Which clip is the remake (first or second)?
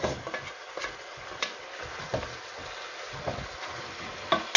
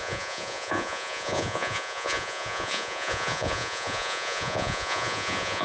second